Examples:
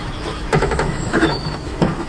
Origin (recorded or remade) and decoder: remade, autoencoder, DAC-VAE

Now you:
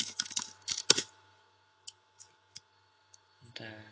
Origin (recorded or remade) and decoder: remade, autoencoder, DAC-VAE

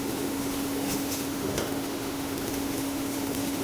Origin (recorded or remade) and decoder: remade, autoencoder, DAC-VAE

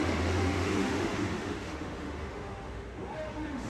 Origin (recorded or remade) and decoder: remade, autoencoder, DAC-VAE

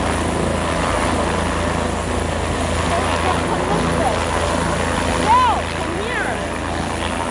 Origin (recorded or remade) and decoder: recorded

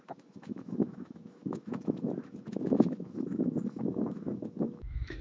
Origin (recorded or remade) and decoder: remade, autoencoder, DAC-VAE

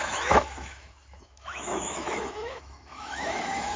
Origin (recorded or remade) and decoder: remade, autoencoder, DAC-VAE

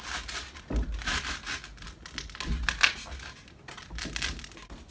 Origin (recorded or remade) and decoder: recorded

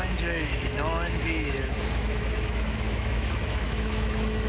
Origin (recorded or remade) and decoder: remade, autoencoder, DAC-VAE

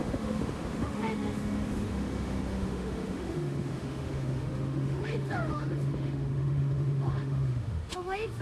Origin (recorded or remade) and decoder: remade, autoencoder, DAC-VAE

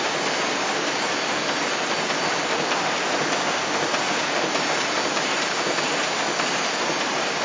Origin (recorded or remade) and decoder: recorded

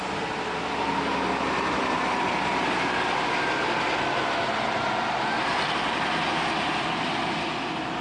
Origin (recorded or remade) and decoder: recorded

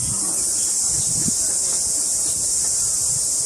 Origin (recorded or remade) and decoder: recorded